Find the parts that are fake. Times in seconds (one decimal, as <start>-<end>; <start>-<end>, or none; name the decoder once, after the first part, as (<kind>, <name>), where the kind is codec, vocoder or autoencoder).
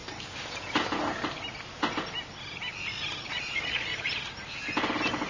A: 3.2-3.9 (vocoder, Vocos)